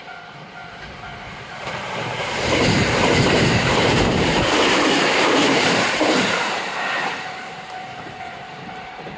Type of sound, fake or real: fake